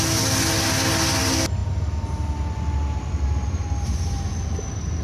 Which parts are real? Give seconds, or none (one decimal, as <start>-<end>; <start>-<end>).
0.0-5.0